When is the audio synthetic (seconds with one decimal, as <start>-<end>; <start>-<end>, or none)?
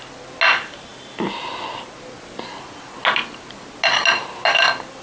none